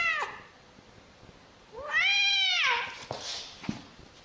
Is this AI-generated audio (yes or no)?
no